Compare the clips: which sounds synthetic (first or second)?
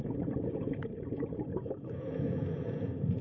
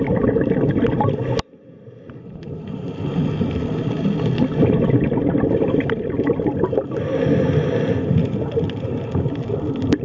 first